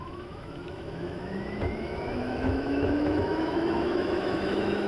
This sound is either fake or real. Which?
fake